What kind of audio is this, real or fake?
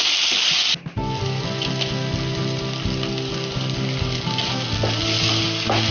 real